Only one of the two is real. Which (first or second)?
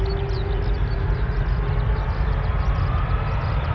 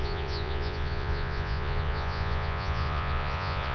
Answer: first